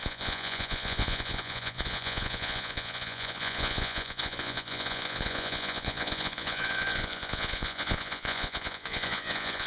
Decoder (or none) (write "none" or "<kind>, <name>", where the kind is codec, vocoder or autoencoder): vocoder, Vocos